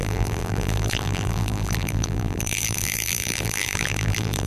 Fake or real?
fake